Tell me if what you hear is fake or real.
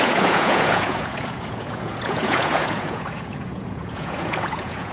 fake